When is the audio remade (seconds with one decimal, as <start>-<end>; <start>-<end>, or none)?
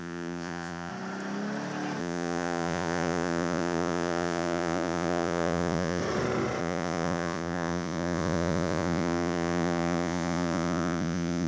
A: 0.0-0.9; 2.0-6.0; 6.6-11.5